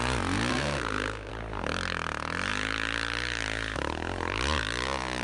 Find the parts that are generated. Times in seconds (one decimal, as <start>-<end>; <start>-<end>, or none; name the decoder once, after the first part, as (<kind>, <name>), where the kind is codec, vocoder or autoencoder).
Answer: 0.5-1.3 (codec, SNAC)